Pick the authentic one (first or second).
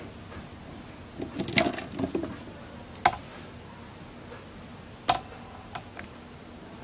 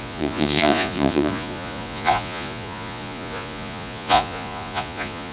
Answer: first